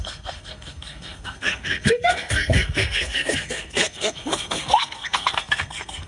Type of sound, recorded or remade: remade